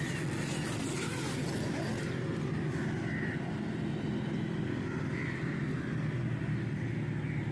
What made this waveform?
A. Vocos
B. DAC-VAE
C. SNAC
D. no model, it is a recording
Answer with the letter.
D